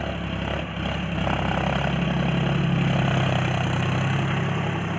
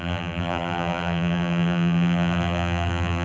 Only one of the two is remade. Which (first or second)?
second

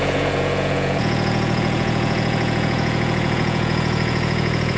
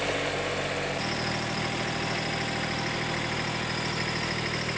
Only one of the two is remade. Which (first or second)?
first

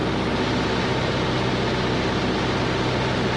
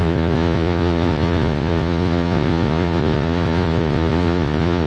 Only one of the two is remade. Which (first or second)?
second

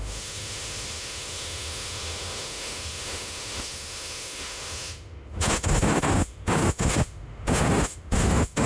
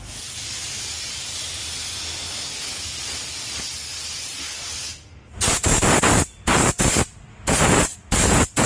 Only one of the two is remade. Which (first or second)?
first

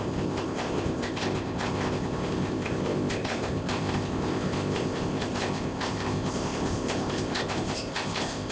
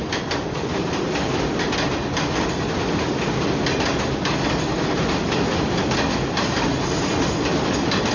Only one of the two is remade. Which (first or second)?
first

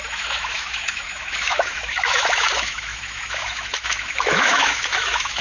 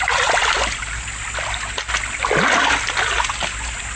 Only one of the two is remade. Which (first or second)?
first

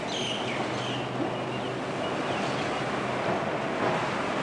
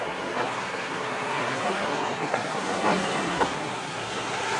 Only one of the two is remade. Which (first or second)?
second